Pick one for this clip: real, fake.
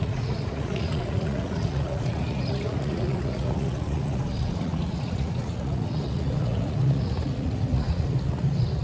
fake